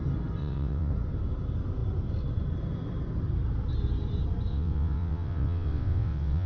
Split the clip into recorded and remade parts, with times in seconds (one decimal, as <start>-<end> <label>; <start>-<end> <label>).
0.0-0.4 recorded; 0.4-0.9 remade; 0.9-4.5 recorded; 4.5-6.5 remade